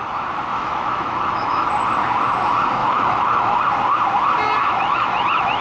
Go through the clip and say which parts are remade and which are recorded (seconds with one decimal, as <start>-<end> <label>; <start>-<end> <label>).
0.0-0.5 recorded; 0.5-1.7 remade; 1.7-2.8 recorded; 2.8-3.6 remade; 3.6-4.6 recorded; 4.6-5.6 remade